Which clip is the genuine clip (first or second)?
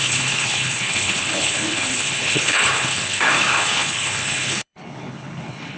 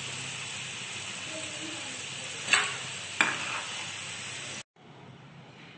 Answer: second